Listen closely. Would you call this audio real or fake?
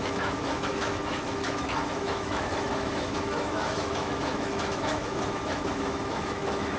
fake